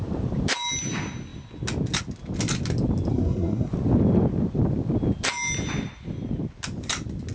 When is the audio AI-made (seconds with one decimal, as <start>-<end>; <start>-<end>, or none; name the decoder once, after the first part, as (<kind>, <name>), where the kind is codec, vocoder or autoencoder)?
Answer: 3.1-3.7 (codec, SNAC)